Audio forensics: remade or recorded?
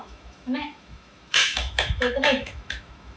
remade